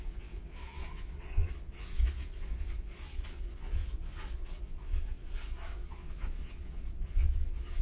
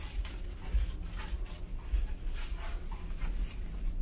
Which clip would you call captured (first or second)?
second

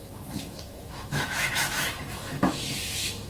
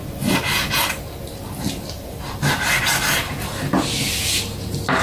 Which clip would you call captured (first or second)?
second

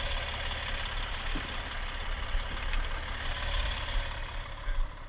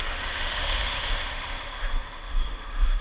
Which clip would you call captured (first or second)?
first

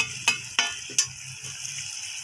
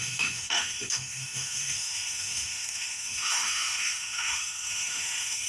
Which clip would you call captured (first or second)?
first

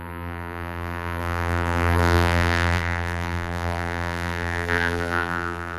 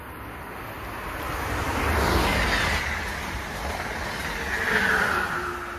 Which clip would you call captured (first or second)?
second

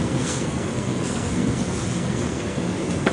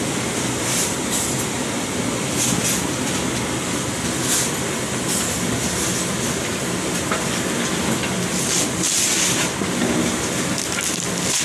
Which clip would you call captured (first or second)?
second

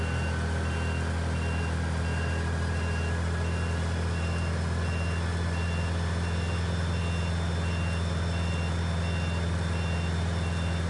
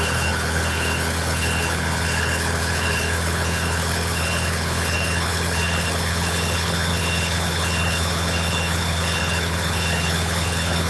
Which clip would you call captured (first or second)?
first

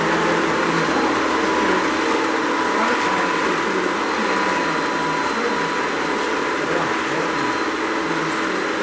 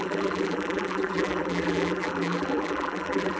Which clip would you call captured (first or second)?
first